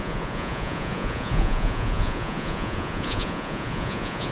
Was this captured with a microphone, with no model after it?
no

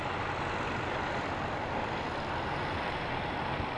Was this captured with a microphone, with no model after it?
yes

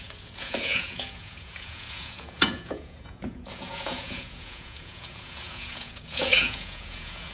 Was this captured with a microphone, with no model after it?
no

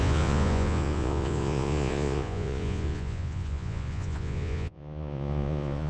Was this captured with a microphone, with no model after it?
no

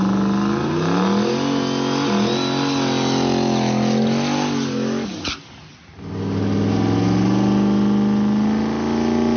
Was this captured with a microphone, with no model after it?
yes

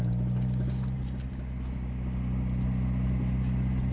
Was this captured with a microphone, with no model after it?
yes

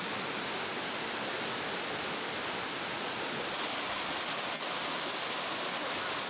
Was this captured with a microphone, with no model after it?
yes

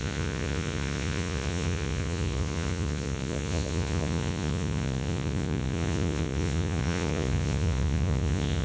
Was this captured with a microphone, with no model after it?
no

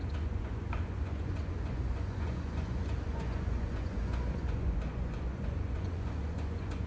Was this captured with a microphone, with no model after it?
no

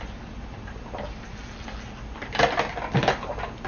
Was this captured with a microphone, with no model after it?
yes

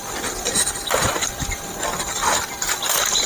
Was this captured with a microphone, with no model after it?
yes